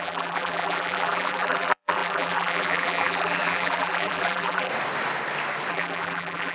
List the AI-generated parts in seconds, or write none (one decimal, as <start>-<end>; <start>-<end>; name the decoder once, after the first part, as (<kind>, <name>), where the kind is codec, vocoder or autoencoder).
0.0-4.7 (vocoder, BigVGAN v2); 5.7-6.5